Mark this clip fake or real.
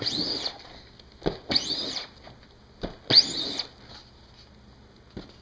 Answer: real